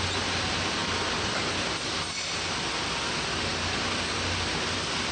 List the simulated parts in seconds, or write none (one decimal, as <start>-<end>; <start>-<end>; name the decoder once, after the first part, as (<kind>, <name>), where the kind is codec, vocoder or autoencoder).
none